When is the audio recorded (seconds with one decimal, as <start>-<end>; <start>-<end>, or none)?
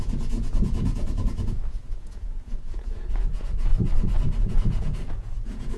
3.7-4.4